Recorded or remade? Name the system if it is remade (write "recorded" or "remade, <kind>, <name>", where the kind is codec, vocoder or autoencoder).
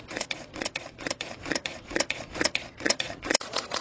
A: remade, vocoder, Vocos